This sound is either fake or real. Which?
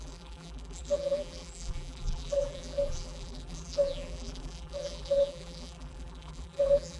fake